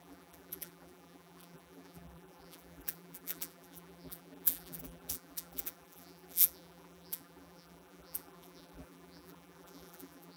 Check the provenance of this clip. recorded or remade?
remade